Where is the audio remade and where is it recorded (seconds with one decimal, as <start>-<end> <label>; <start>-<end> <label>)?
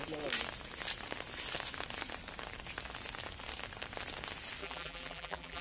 0.0-4.6 recorded; 4.6-5.6 remade